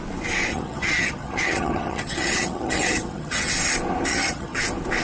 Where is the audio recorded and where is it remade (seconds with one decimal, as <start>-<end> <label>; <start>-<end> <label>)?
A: 0.0-0.5 recorded; 0.5-3.5 remade; 3.5-4.1 recorded; 4.1-4.6 remade; 4.6-5.0 recorded

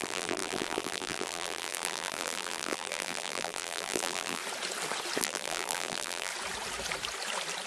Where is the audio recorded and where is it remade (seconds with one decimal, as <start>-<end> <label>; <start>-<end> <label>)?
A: 0.0-4.4 remade; 4.4-5.2 recorded; 5.2-6.3 remade; 6.3-7.7 recorded

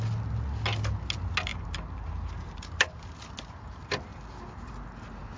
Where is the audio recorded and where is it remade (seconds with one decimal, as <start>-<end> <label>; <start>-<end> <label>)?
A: 0.0-1.5 recorded; 1.5-3.3 remade; 3.3-5.4 recorded

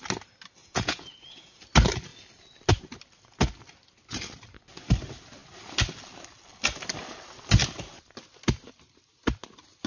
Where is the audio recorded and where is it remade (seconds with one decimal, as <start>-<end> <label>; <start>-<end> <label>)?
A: 0.0-0.6 recorded; 0.6-1.6 remade; 1.6-9.9 recorded